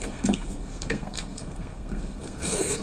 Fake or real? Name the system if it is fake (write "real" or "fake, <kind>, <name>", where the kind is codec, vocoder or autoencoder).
fake, codec, SNAC